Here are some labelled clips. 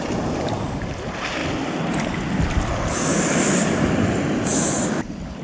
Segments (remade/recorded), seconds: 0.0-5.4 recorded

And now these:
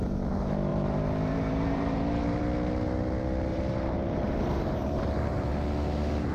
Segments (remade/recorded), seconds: 0.0-0.7 recorded; 0.7-2.4 remade; 2.4-3.5 recorded; 3.5-5.5 remade; 5.5-6.3 recorded

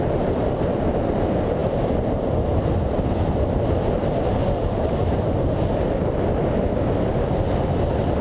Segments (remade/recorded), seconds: 0.0-4.4 remade; 4.4-7.1 recorded; 7.1-8.2 remade

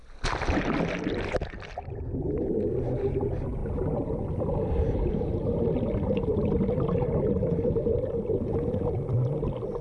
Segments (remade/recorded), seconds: 0.0-9.8 recorded